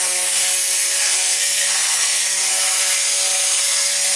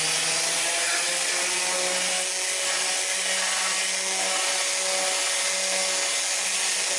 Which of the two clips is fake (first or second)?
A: first